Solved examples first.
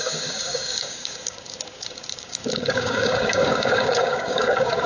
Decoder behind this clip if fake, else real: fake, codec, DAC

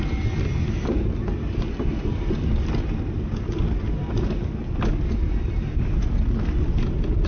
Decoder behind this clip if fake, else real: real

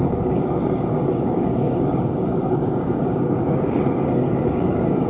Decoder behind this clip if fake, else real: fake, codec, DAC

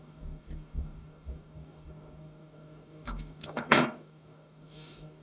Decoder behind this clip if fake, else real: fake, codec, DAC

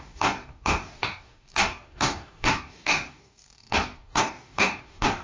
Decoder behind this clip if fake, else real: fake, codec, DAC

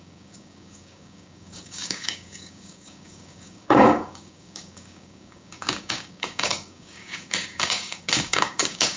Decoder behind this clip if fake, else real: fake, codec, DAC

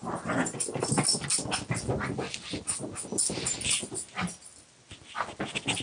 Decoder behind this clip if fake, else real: real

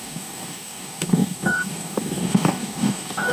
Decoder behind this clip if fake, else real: fake, codec, DAC